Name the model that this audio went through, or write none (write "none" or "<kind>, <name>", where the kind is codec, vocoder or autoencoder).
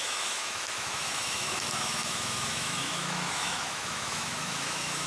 autoencoder, DAC-VAE